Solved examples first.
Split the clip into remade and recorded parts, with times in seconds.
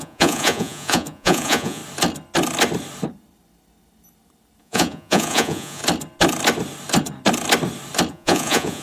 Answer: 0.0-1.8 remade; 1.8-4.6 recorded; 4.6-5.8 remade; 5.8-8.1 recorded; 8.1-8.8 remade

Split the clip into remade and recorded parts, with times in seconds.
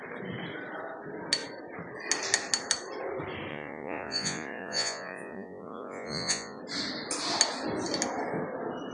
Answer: 0.0-3.5 recorded; 3.5-6.6 remade; 6.6-8.9 recorded